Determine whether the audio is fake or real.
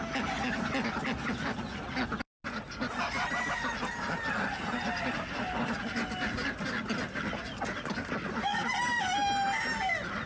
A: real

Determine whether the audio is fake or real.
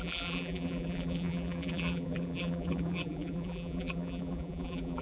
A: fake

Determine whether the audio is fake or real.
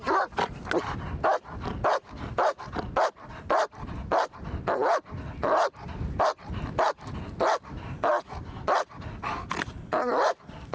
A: real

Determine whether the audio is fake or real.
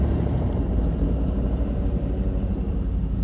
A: fake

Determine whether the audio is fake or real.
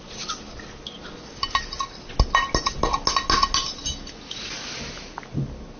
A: real